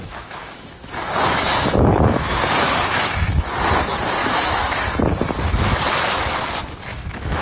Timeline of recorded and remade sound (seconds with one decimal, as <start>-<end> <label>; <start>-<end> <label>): 0.0-3.5 remade; 3.5-4.2 recorded; 4.2-4.8 remade; 4.8-6.9 recorded; 6.9-7.4 remade